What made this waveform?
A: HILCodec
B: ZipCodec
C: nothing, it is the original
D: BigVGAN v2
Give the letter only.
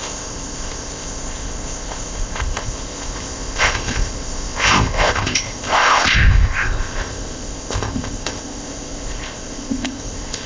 B